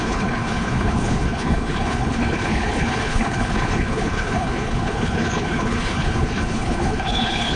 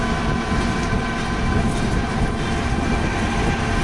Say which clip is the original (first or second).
second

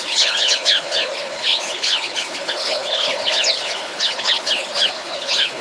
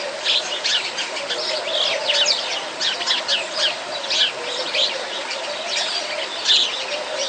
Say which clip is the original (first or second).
second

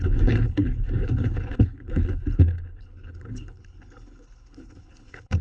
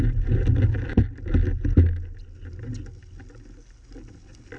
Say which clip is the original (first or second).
second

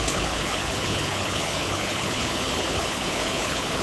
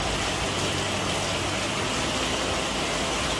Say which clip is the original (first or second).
second